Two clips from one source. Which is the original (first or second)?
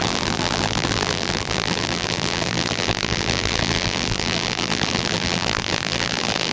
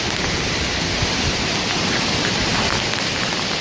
second